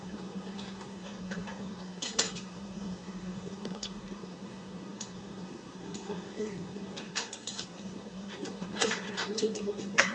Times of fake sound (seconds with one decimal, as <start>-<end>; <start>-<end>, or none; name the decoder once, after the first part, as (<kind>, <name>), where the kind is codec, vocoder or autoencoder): 0.0-10.1 (codec, SNAC)